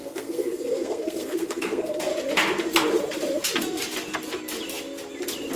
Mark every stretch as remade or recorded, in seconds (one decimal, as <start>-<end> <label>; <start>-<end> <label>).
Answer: 0.0-2.1 remade; 2.1-5.6 recorded